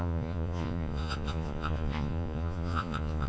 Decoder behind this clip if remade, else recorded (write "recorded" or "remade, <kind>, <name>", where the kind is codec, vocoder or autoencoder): remade, vocoder, Vocos